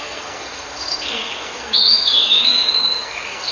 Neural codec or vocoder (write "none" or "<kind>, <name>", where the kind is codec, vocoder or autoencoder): codec, SNAC